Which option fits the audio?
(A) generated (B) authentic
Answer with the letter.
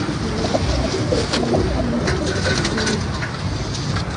B